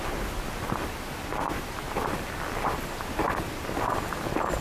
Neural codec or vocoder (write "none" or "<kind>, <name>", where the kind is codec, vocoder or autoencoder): none